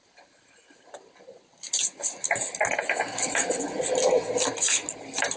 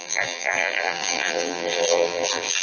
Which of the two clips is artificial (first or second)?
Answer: second